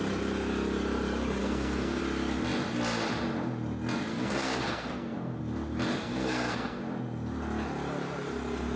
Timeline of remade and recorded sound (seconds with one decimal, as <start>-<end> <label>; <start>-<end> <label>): 0.0-1.4 recorded; 1.4-2.0 remade; 2.0-4.1 recorded; 4.1-5.4 remade; 5.4-6.0 recorded; 6.0-6.8 remade; 6.8-8.8 recorded

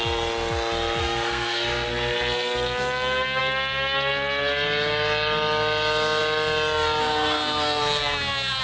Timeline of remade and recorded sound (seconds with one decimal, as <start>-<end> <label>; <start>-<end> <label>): 0.0-1.0 recorded; 1.0-1.9 remade; 1.9-7.0 recorded; 7.0-8.6 remade

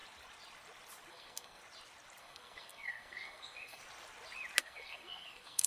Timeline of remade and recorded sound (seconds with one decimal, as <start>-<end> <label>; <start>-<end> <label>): 0.0-1.1 recorded; 1.1-1.6 remade; 1.6-2.2 recorded; 2.2-3.8 remade; 3.8-4.6 recorded; 4.6-5.7 remade

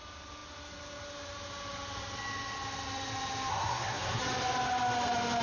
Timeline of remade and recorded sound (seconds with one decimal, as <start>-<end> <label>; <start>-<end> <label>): 0.0-3.5 recorded; 3.5-4.2 remade; 4.2-5.4 recorded